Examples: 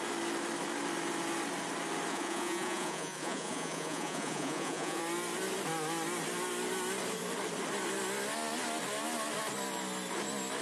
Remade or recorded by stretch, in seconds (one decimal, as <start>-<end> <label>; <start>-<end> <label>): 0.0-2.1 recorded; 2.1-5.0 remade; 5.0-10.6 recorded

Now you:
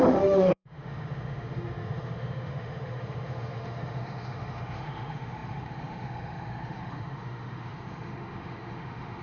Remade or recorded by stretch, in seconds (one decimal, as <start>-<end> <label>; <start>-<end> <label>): 0.0-9.2 remade

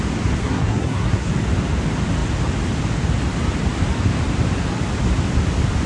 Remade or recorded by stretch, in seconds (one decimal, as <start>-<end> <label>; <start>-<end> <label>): 0.0-0.4 recorded; 0.4-1.3 remade; 1.3-5.9 recorded

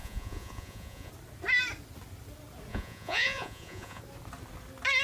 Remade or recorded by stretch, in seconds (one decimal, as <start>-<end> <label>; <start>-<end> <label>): 0.0-1.1 remade; 1.1-2.7 recorded; 2.7-4.0 remade; 4.0-5.0 recorded